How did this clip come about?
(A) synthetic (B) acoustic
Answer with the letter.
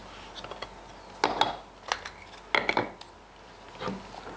B